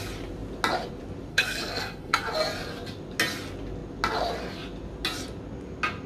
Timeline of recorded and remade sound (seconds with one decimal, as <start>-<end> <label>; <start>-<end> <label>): 0.0-1.3 recorded; 1.3-2.3 remade; 2.3-6.1 recorded